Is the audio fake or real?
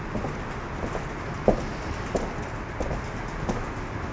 real